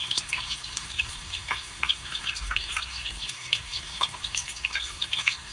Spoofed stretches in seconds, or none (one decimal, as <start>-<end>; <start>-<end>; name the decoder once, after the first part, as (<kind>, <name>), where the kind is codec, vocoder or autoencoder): 0.0-5.5 (codec, SNAC)